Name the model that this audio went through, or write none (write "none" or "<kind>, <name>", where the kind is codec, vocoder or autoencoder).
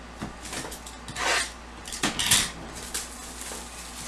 none